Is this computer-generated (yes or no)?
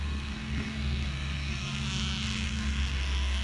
yes